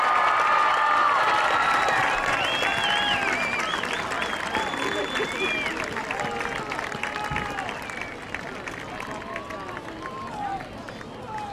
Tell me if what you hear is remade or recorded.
recorded